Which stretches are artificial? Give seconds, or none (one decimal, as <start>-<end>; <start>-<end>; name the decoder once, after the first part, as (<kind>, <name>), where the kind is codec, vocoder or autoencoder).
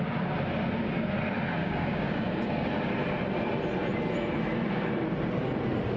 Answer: 1.6-2.7 (codec, DAC)